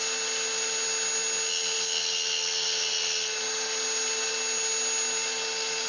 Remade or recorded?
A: recorded